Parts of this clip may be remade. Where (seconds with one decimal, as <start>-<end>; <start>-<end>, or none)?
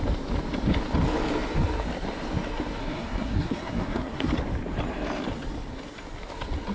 2.8-4.3